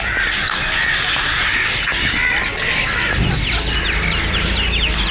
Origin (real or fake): real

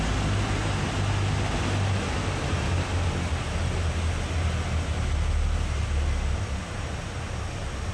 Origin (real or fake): real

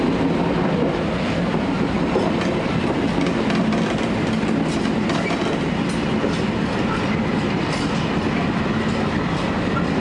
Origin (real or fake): real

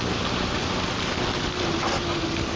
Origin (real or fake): real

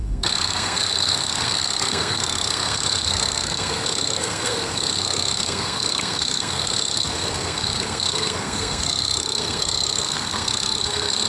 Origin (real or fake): fake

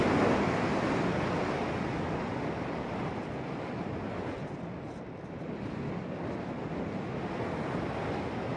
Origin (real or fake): real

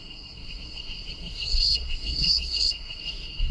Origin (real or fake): fake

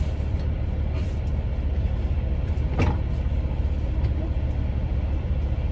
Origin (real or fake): real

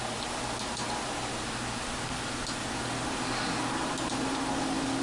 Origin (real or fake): real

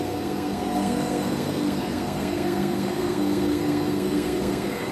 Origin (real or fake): fake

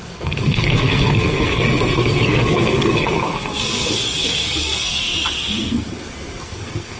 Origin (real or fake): fake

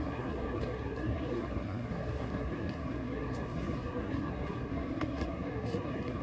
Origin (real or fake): fake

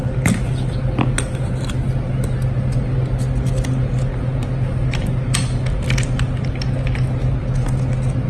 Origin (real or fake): real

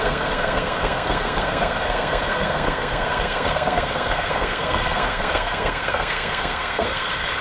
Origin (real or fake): fake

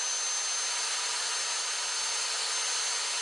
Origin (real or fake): real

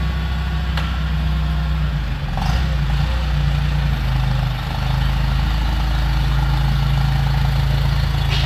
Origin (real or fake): real